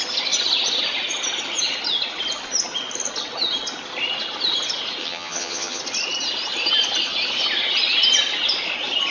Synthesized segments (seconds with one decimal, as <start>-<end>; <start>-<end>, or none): 5.0-5.8